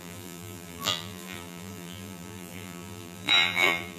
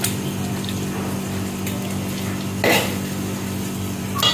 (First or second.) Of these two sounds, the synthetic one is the first